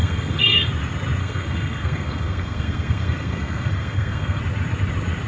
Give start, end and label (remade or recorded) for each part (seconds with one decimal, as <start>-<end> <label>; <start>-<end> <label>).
0.0-0.7 remade; 0.7-1.2 recorded; 1.2-4.4 remade; 4.4-5.3 recorded

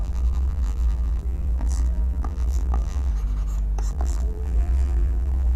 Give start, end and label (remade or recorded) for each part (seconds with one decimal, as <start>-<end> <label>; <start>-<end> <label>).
0.0-3.1 remade; 3.1-3.9 recorded; 3.9-5.6 remade

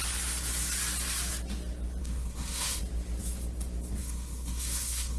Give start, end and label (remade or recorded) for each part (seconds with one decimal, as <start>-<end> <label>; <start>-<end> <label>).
0.0-2.0 recorded; 2.0-2.8 remade; 2.8-4.0 recorded; 4.0-5.2 remade

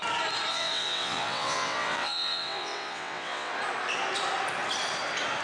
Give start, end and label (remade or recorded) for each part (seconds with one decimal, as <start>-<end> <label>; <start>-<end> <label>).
0.0-0.5 recorded; 0.5-3.5 remade; 3.5-5.4 recorded

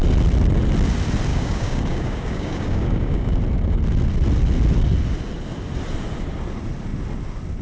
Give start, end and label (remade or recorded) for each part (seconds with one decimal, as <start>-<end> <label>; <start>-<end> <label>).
0.0-1.3 recorded; 1.3-3.4 remade; 3.4-7.6 recorded

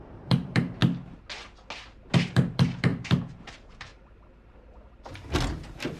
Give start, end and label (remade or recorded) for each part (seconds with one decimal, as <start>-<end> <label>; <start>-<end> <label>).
0.0-0.8 remade; 0.8-2.3 recorded; 2.3-3.9 remade; 3.9-5.5 recorded; 5.5-6.0 remade

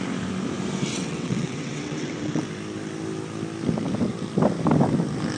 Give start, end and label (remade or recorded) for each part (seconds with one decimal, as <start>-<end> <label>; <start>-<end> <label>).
0.0-0.9 recorded; 0.9-2.4 remade; 2.4-5.4 recorded